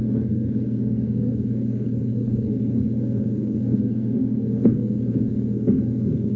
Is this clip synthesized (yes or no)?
yes